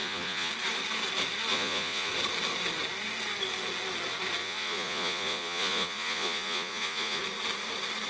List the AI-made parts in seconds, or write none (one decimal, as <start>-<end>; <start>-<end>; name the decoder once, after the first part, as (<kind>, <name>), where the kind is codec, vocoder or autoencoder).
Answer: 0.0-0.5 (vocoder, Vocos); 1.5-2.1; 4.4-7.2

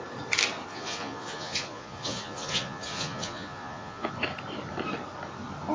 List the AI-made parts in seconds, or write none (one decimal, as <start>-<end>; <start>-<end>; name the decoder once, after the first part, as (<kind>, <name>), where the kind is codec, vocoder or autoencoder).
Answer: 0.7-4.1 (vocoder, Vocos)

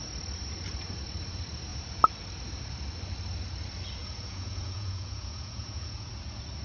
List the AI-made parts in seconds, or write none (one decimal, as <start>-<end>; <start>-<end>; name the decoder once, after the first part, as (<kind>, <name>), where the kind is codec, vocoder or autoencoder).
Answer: 4.0-6.1 (vocoder, Vocos)